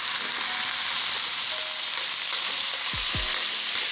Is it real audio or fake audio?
real